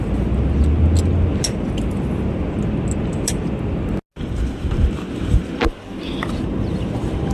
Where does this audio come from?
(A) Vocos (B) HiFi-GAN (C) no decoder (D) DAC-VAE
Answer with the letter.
C